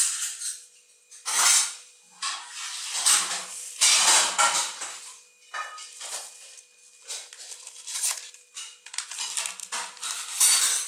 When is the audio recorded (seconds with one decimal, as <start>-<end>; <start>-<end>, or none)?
0.0-10.9